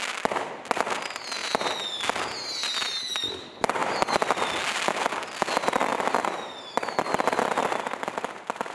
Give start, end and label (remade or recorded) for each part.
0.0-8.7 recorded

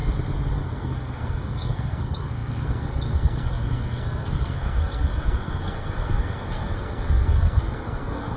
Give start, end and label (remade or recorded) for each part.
0.0-0.6 recorded; 0.6-8.4 remade

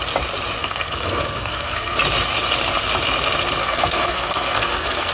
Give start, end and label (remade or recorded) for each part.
0.0-0.6 recorded; 0.6-2.0 remade; 2.0-3.6 recorded; 3.6-5.1 remade